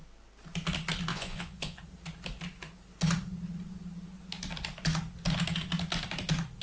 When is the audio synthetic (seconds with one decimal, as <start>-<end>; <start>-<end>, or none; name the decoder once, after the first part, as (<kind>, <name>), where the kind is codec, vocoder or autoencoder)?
1.1-1.8 (vocoder, Vocos)